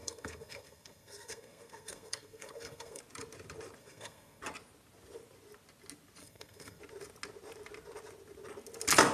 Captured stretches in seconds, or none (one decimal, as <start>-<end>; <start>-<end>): 3.0-3.8; 4.4-6.2; 6.8-9.1